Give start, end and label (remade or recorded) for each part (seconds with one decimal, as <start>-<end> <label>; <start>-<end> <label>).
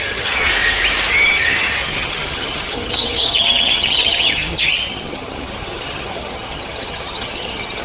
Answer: 0.0-0.5 remade; 0.5-1.1 recorded; 1.1-7.8 remade